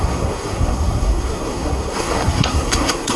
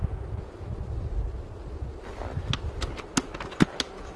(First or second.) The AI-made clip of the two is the first